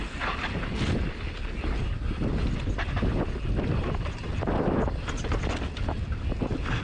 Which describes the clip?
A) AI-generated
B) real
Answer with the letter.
B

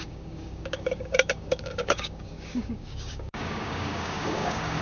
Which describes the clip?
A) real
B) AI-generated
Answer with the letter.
B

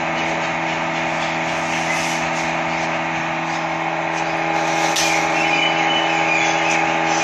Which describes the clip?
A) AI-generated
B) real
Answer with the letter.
B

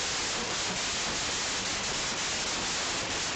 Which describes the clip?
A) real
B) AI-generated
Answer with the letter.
A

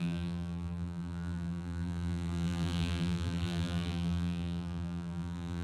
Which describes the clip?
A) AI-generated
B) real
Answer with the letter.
A